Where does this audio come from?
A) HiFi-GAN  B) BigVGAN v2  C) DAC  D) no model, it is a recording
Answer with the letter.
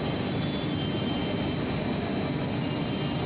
D